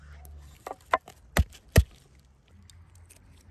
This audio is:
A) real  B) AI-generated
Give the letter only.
A